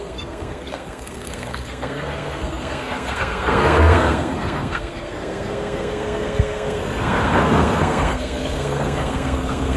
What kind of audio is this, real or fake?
fake